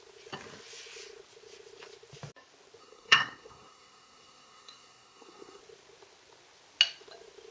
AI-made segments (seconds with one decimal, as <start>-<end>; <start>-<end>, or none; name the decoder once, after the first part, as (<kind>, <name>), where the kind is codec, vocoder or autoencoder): 2.8-5.6 (codec, SNAC)